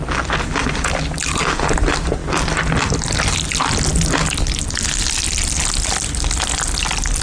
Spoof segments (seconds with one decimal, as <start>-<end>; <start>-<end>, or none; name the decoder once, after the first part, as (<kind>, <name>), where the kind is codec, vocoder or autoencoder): none